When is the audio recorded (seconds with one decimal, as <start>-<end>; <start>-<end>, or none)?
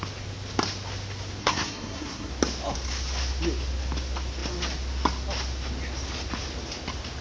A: 0.0-1.4; 2.3-7.2